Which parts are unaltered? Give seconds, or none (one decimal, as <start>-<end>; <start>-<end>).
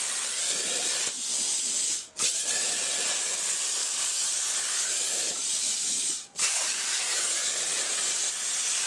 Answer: 0.0-3.8; 5.1-5.5; 7.6-8.9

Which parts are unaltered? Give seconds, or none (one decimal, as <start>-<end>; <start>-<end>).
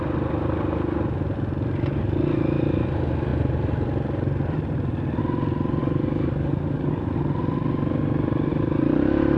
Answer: 0.0-5.8; 7.1-9.4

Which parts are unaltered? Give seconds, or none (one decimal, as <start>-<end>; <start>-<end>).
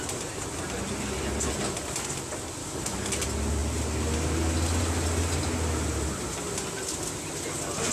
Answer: 0.0-2.6; 3.1-7.9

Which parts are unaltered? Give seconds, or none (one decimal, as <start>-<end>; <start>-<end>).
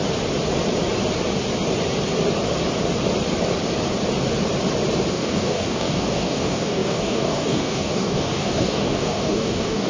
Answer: 0.0-5.1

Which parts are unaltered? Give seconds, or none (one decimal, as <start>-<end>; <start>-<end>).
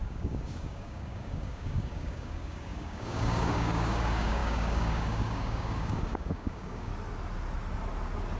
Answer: 6.9-8.4